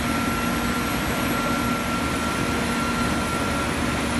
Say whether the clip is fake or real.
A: real